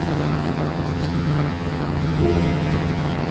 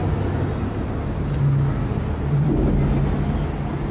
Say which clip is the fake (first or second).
first